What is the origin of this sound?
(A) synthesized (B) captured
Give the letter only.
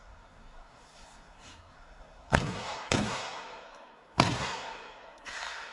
A